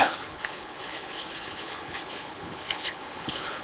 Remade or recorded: remade